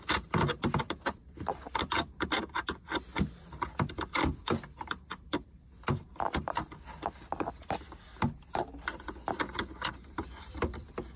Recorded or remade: recorded